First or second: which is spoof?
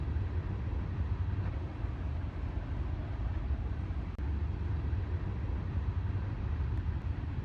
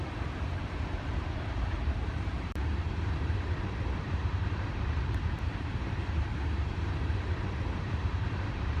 second